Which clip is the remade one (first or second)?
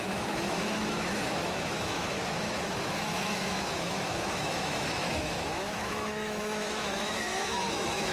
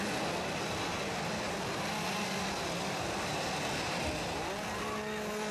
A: first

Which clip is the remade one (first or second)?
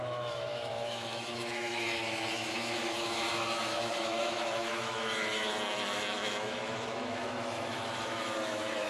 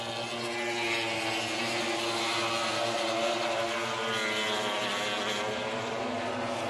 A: first